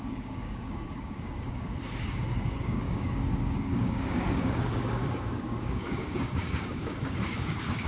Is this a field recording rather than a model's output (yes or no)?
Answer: no